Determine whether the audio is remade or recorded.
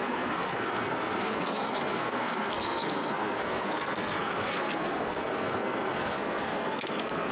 remade